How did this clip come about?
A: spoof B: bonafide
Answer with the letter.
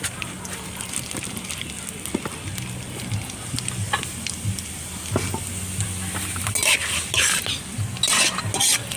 B